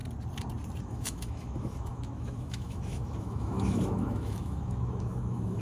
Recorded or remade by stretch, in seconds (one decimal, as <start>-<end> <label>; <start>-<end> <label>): 0.0-0.8 recorded; 0.8-5.6 remade